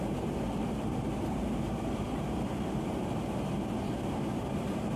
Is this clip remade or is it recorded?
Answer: remade